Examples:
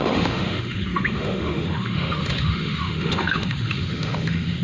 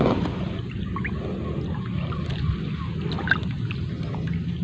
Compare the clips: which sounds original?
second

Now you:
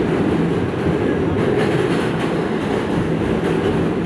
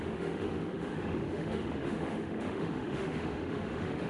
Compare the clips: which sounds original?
first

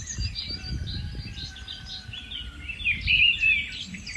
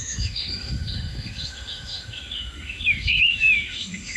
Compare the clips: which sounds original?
first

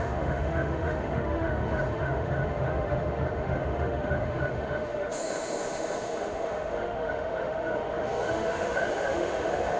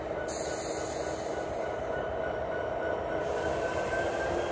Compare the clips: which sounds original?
second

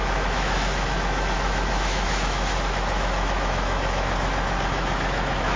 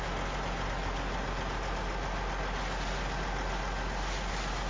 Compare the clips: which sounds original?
second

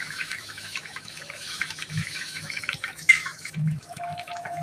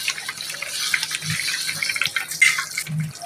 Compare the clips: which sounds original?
second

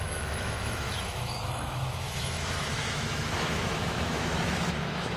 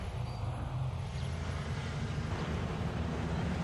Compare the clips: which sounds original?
second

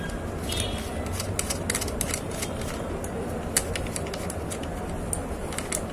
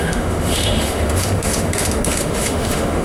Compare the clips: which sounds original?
first